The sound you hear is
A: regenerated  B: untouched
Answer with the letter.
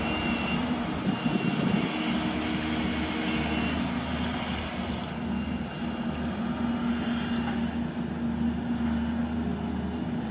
B